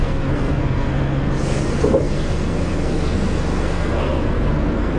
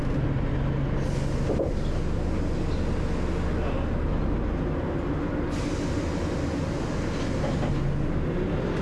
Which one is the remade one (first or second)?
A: first